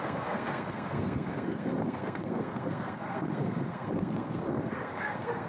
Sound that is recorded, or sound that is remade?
remade